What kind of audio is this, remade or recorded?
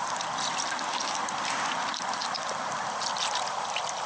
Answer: remade